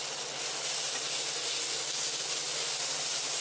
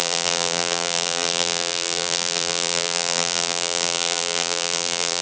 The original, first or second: first